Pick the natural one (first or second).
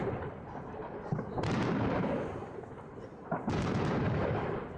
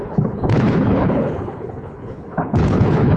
first